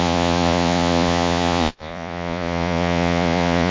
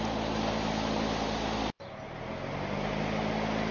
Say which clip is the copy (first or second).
first